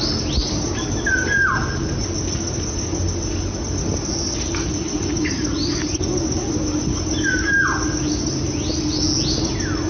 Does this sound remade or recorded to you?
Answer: recorded